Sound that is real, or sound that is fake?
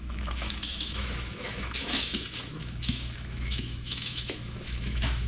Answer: fake